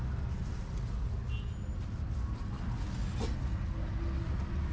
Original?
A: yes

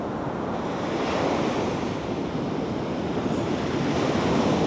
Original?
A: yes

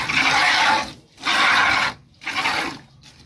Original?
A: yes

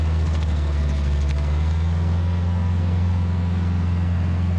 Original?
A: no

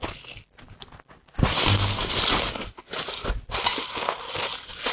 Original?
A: yes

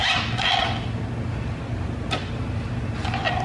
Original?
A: yes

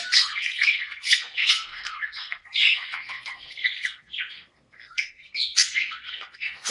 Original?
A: no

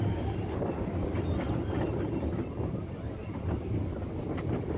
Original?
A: yes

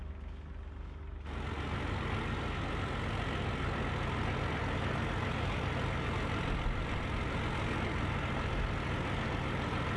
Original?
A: yes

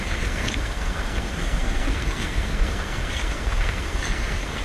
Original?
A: no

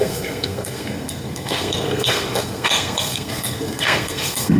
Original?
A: no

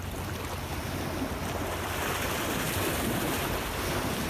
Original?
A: yes